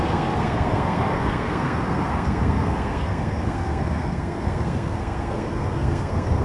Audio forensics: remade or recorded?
remade